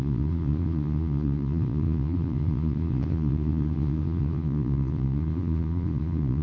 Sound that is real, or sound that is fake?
fake